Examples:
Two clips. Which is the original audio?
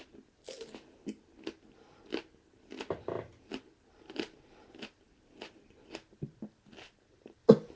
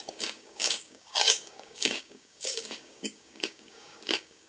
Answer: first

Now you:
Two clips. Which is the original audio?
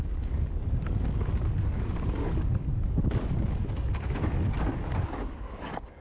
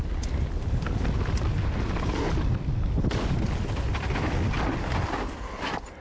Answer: second